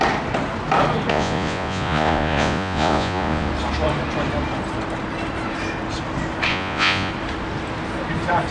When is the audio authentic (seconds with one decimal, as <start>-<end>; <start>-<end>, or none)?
0.0-1.1; 3.5-6.5; 7.1-8.5